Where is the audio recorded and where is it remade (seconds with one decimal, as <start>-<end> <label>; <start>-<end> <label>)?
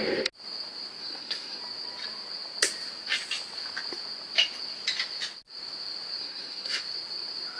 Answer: 0.0-1.0 recorded; 1.0-1.6 remade; 1.6-6.2 recorded; 6.2-6.8 remade; 6.8-7.6 recorded